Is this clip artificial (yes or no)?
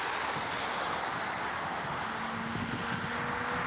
no